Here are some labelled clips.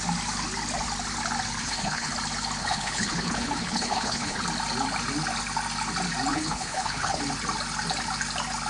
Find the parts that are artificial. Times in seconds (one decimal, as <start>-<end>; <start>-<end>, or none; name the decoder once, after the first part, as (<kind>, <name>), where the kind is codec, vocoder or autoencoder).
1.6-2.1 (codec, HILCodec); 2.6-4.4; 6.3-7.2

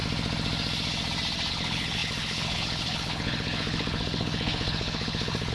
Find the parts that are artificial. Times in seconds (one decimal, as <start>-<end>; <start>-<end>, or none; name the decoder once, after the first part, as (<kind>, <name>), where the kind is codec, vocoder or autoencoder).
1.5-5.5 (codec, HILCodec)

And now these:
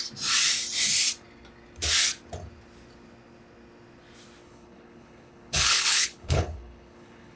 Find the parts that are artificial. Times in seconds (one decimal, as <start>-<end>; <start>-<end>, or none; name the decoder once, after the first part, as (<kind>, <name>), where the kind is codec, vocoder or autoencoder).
4.4-7.4 (codec, HILCodec)